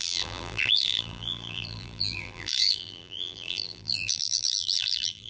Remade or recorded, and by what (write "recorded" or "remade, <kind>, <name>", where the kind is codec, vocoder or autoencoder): remade, vocoder, BigVGAN v2